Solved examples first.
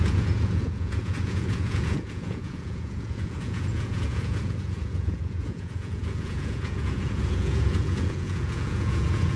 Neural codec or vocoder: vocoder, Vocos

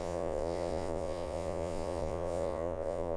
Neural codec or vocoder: vocoder, Vocos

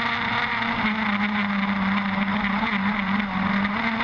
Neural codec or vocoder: none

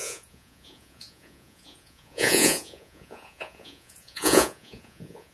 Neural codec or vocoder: vocoder, Vocos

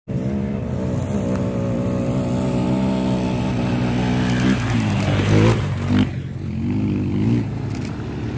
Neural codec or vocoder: none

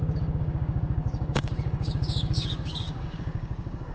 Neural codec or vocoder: codec, DAC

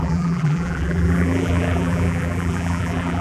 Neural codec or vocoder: vocoder, BigVGAN v2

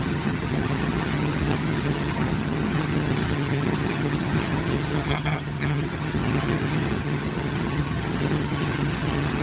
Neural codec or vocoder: vocoder, HiFi-GAN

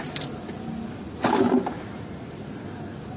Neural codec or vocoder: none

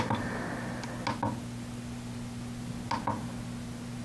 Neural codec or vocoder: none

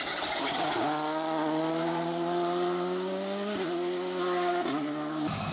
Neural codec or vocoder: none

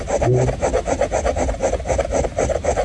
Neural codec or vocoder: none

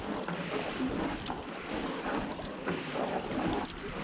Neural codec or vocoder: none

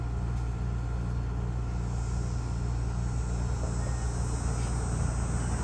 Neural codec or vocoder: none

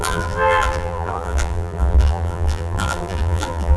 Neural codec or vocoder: vocoder, BigVGAN v2